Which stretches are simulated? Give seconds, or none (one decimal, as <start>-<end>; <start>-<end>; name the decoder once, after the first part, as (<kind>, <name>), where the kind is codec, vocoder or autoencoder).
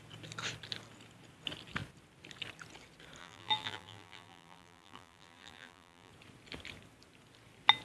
3.2-6.1 (vocoder, BigVGAN v2)